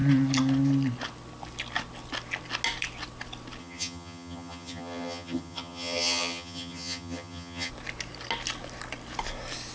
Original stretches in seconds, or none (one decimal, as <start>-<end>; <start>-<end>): 0.0-3.6; 7.7-9.7